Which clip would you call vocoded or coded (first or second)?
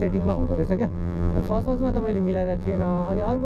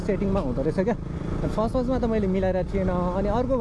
first